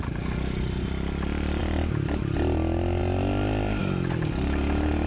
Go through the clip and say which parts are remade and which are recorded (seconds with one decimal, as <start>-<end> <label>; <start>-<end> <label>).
0.0-5.1 recorded